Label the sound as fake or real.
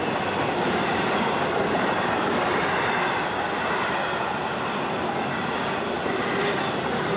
real